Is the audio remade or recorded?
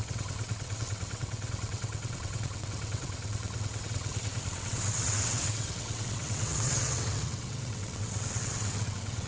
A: remade